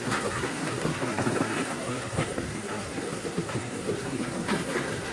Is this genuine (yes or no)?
no